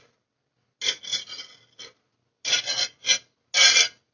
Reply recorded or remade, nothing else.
recorded